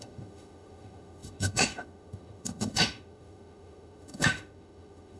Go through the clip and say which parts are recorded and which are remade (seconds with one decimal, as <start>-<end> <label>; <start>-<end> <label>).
0.0-5.2 remade